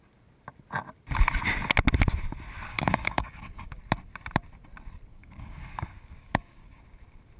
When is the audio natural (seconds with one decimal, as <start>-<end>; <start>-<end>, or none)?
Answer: 0.0-2.7; 3.8-5.1; 6.8-7.4